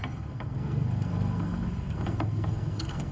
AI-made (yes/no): yes